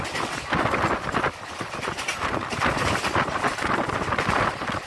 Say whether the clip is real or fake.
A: fake